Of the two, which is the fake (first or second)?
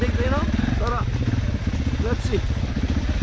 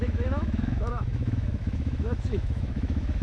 second